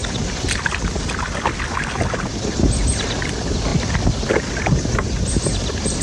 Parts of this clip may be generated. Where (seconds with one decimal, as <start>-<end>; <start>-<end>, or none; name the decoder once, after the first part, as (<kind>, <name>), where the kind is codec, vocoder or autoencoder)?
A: none